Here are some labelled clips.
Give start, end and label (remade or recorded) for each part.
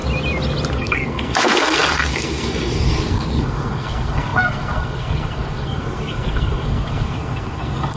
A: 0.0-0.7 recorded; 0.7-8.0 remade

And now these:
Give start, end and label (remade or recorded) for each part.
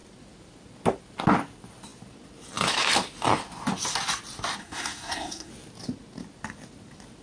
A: 0.0-4.6 recorded; 4.6-5.5 remade; 5.5-7.2 recorded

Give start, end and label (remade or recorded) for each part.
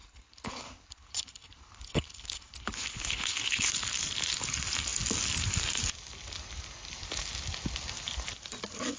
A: 0.0-3.7 remade; 3.7-9.0 recorded